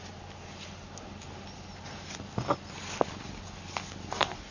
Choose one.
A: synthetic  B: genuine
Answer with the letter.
B